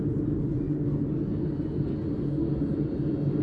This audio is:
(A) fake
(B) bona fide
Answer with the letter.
B